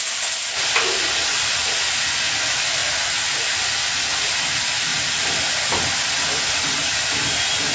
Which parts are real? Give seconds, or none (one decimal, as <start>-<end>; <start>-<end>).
0.0-4.9; 5.4-7.7